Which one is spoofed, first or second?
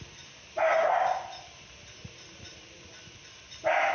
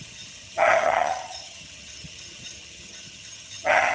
second